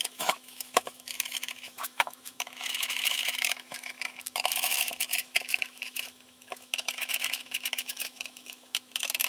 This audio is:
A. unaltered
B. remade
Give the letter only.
B